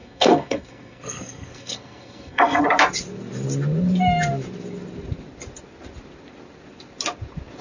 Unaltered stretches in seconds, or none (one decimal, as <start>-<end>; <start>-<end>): 2.6-7.6